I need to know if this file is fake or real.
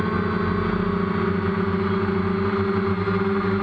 real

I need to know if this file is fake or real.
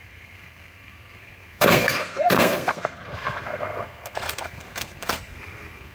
fake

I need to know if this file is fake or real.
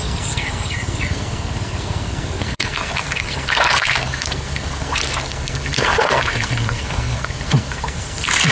fake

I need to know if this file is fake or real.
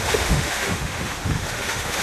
fake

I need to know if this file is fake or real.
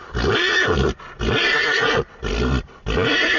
real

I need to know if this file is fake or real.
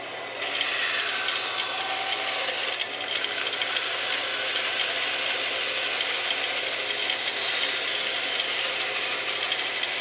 real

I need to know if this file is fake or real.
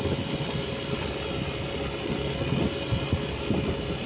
real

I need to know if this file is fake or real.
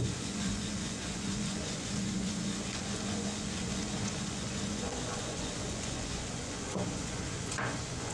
fake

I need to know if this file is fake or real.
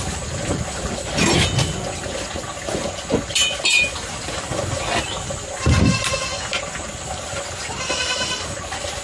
real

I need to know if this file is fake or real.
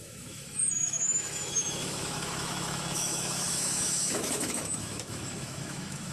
fake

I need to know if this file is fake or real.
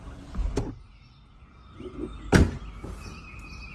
real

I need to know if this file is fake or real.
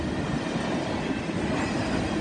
real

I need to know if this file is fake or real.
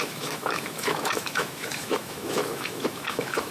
fake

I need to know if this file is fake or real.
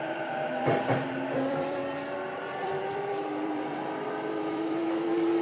fake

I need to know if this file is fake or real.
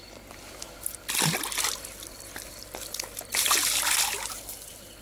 real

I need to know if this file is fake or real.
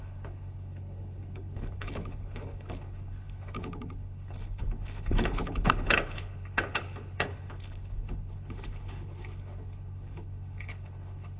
fake